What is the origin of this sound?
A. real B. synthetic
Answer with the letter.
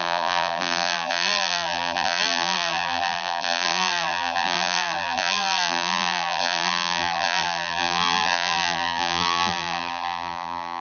B